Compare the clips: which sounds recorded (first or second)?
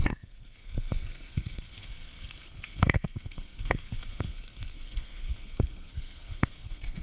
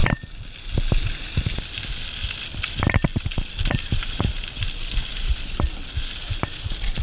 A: second